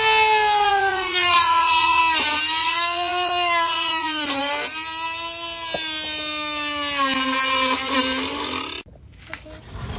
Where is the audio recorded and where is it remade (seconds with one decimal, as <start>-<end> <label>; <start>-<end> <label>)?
0.0-0.6 recorded; 0.6-2.0 remade; 2.0-2.6 recorded; 2.6-4.4 remade; 4.4-10.0 recorded